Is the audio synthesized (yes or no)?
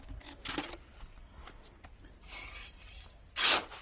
no